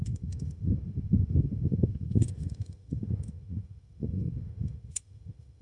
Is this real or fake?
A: fake